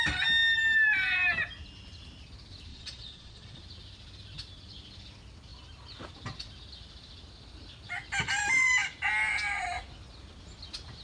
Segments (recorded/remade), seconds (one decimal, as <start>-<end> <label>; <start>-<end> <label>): 0.0-2.7 recorded; 2.7-3.6 remade; 3.6-11.0 recorded